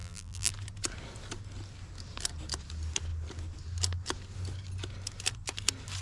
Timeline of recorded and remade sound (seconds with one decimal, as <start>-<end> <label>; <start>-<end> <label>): 0.0-0.5 remade; 0.5-6.0 recorded